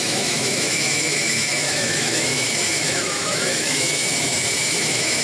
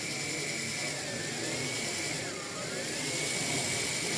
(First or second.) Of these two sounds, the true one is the second